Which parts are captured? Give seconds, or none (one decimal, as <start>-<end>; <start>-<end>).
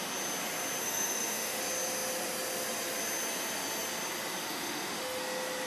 0.0-0.8; 1.6-4.4; 5.2-5.7